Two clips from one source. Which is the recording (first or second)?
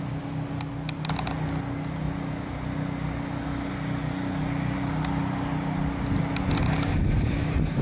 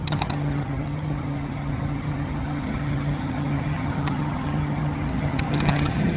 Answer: first